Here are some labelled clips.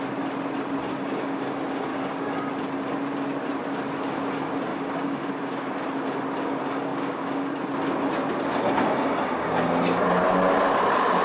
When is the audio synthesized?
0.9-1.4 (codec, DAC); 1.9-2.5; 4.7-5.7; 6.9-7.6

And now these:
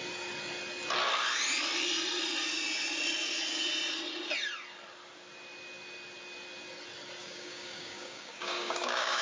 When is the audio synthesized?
7.2-9.2 (codec, DAC)